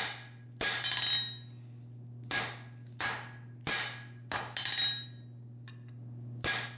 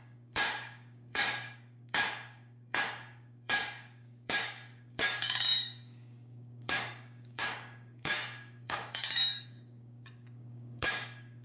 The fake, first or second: second